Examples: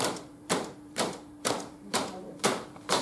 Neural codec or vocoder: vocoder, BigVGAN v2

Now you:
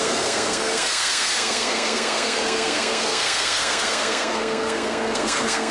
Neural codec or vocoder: codec, SNAC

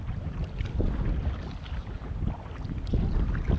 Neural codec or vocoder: none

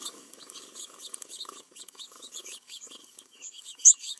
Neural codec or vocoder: codec, DAC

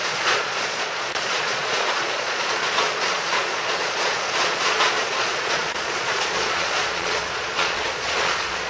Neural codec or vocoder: vocoder, Vocos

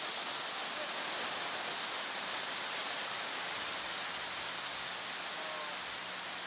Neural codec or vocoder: none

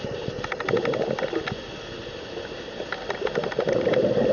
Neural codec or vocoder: none